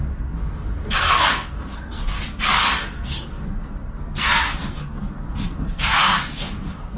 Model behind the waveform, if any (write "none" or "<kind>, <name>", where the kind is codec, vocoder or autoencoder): codec, SNAC